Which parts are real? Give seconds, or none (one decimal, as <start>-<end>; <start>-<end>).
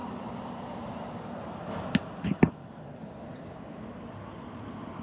1.4-5.0